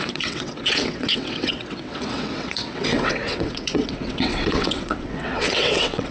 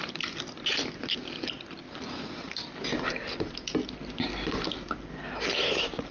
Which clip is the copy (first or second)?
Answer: first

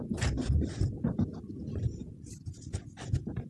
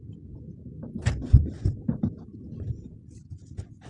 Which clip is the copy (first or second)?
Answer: first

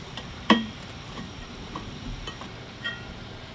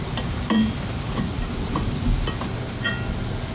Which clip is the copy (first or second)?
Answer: first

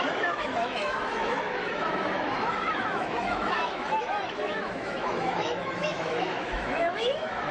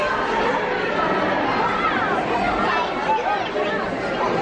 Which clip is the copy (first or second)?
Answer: first